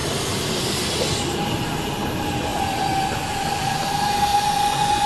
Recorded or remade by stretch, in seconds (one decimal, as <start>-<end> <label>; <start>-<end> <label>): 0.0-4.3 recorded; 4.3-5.1 remade